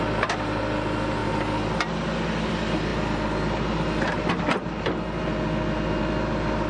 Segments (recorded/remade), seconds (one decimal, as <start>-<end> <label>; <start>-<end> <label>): 0.0-6.7 recorded